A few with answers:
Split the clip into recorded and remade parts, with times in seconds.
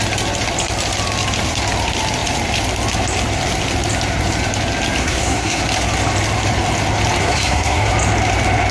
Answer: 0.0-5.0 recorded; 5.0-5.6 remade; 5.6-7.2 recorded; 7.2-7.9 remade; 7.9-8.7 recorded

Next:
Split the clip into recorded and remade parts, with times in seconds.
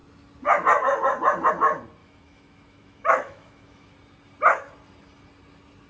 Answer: 0.0-2.0 recorded; 2.0-3.9 remade; 3.9-5.9 recorded